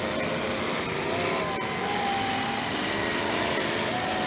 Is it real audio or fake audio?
real